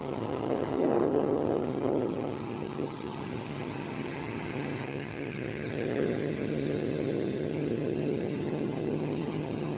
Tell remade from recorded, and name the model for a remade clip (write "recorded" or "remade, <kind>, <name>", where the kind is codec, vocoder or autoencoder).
remade, vocoder, HiFi-GAN